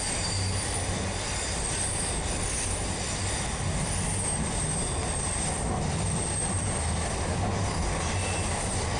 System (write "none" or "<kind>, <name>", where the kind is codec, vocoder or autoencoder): none